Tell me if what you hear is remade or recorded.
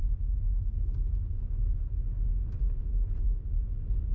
recorded